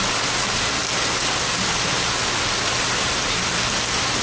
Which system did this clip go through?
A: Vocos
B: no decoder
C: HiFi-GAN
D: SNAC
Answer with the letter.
B